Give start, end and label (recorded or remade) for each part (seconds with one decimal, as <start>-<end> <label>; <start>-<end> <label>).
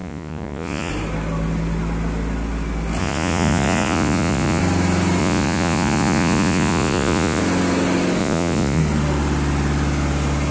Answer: 0.0-0.9 remade; 0.9-3.0 recorded; 3.0-4.6 remade; 4.6-5.2 recorded; 5.2-7.4 remade; 7.4-8.2 recorded; 8.2-8.8 remade; 8.8-10.5 recorded